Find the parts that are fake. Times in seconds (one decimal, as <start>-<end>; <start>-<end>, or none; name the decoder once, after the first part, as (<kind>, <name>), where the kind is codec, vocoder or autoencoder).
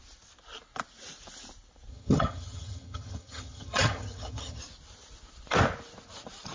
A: 1.9-4.6 (vocoder, HiFi-GAN)